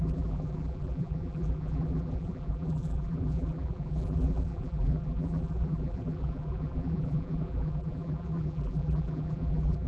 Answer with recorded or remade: remade